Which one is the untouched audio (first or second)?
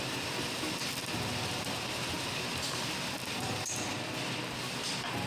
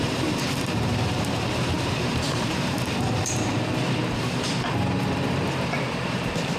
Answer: first